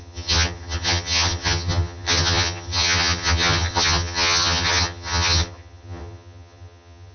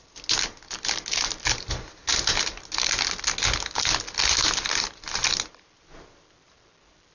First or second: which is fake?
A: first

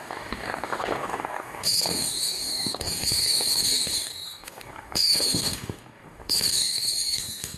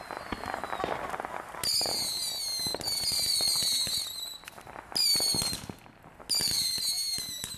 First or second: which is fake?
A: first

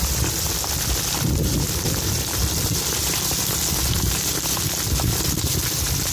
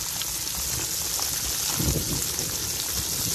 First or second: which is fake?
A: first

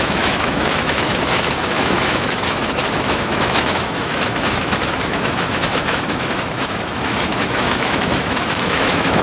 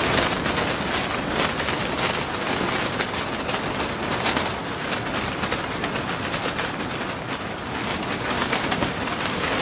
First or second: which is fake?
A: first